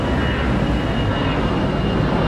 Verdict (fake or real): real